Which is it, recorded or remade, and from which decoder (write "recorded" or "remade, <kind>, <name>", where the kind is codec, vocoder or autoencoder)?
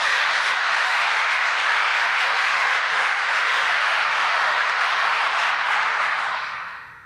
remade, autoencoder, DAC-VAE